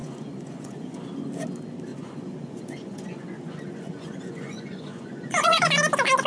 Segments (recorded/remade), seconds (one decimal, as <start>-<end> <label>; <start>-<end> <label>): 0.0-1.0 remade; 1.0-1.9 recorded; 1.9-5.7 remade; 5.7-6.3 recorded